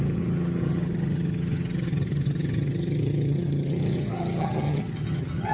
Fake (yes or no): yes